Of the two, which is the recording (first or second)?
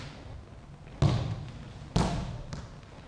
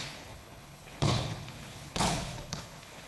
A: first